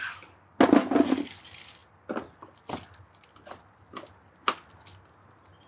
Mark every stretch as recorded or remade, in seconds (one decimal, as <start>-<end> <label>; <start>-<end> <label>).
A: 0.0-5.7 recorded